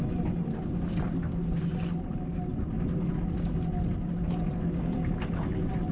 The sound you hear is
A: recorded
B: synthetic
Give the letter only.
A